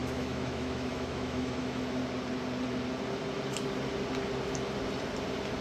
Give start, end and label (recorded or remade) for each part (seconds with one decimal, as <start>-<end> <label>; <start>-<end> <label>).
0.0-2.0 remade; 2.0-5.6 recorded